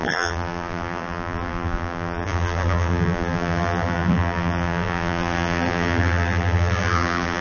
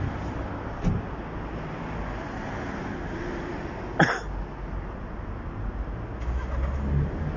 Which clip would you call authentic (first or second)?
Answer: second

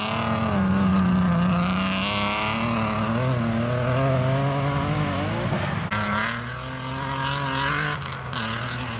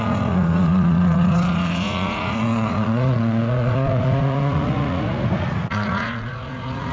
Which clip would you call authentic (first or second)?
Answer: first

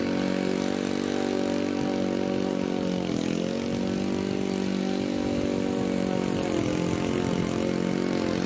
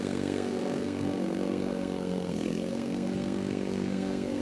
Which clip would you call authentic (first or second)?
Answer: first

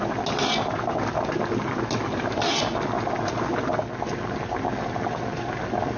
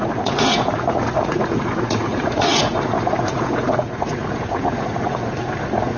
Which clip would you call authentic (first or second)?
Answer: first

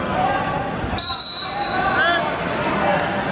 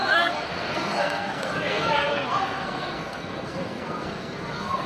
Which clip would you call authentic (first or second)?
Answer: first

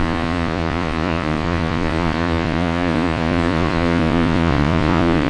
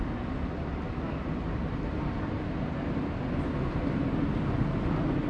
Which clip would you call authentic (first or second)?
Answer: second